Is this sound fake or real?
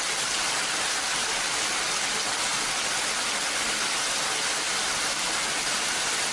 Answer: real